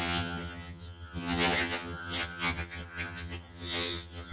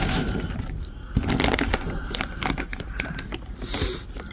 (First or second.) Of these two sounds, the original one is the second